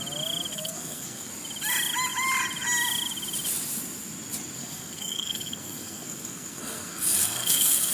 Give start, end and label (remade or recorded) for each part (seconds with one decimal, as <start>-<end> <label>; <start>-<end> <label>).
0.0-0.5 recorded; 0.5-1.3 remade; 1.3-4.6 recorded; 4.6-7.9 remade